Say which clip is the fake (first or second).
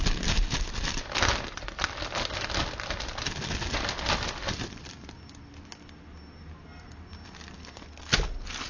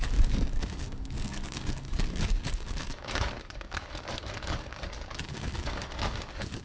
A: second